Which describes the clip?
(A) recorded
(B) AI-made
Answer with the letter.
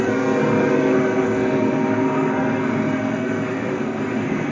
B